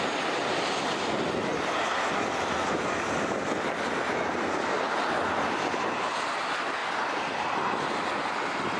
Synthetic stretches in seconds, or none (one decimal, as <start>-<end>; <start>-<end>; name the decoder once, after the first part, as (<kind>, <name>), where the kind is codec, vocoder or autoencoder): none